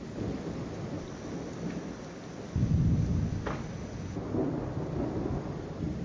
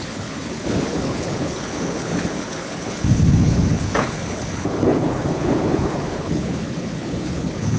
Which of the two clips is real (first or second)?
first